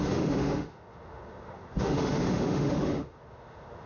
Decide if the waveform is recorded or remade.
remade